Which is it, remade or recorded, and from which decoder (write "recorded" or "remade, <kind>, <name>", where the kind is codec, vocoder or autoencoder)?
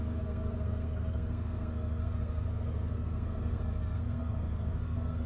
remade, codec, SNAC